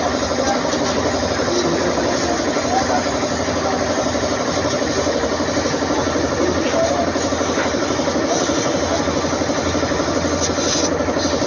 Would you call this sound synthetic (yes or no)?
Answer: no